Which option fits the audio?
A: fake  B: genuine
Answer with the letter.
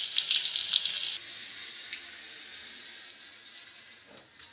B